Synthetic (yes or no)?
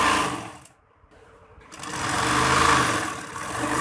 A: no